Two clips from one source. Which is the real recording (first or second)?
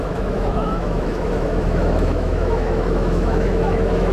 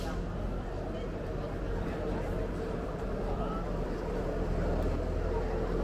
second